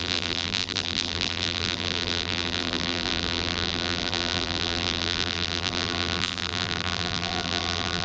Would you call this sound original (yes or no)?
no